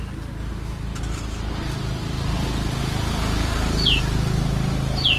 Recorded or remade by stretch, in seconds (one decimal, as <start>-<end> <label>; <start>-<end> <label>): 0.0-0.9 recorded; 0.9-4.0 remade; 4.0-5.2 recorded